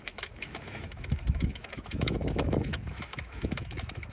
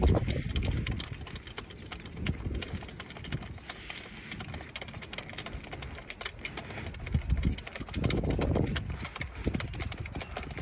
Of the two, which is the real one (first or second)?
second